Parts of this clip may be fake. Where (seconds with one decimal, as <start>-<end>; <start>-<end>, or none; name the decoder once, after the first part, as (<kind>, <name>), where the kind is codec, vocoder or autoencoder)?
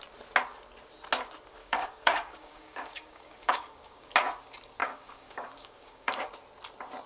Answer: 1.6-4.1 (codec, DAC); 4.8-6.3